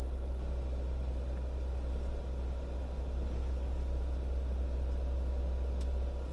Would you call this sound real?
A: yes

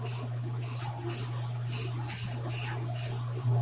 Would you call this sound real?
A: yes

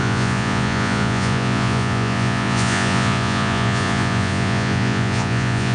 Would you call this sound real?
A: no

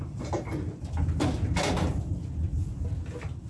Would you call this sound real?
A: yes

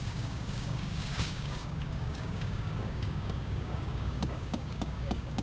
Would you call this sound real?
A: no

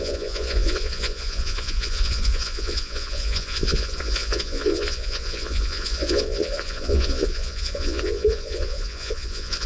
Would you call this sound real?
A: no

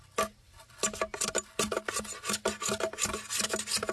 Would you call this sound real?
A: yes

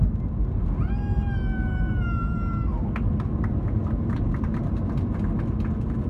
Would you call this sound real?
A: yes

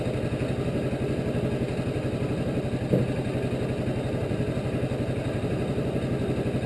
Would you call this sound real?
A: yes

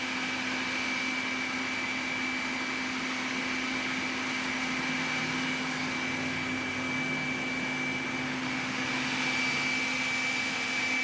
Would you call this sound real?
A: yes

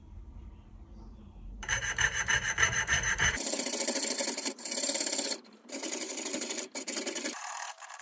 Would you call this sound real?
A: no